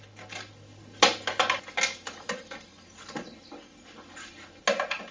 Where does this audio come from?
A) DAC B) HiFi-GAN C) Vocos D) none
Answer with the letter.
D